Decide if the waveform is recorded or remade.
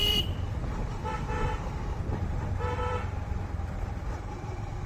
remade